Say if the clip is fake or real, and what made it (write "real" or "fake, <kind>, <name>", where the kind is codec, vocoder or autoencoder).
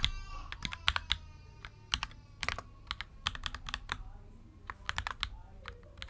real